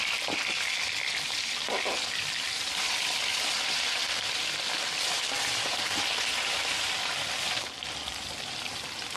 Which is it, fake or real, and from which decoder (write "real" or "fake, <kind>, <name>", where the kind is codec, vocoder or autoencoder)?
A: fake, vocoder, BigVGAN v2